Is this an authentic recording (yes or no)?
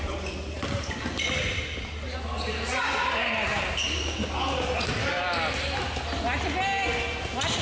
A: yes